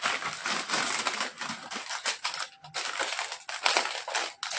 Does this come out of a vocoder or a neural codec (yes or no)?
no